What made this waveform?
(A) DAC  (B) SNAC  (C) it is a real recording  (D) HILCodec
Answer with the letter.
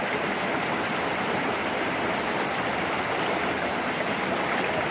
C